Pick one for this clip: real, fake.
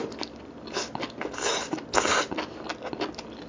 real